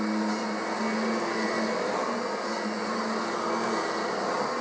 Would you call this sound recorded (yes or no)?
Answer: yes